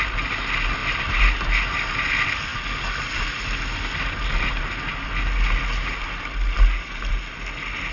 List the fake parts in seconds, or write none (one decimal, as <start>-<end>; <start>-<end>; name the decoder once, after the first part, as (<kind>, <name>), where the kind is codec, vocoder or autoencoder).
none